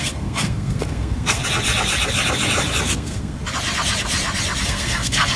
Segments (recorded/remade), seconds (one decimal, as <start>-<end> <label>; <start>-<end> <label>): 0.0-1.4 remade; 1.4-2.8 recorded; 2.8-3.4 remade; 3.4-4.6 recorded; 4.6-5.4 remade